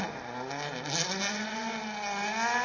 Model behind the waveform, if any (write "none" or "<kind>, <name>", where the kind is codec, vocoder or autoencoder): none